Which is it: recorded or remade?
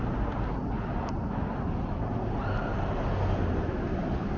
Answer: recorded